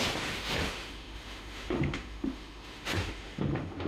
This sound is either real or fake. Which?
fake